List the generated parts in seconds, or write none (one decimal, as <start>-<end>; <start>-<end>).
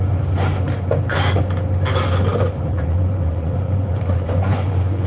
2.3-5.1